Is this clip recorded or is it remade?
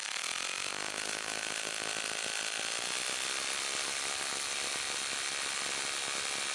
recorded